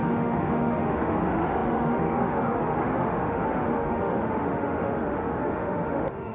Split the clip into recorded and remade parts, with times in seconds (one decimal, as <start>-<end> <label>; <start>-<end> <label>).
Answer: 0.0-6.3 remade